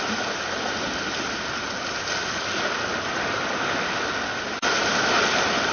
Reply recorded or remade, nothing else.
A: recorded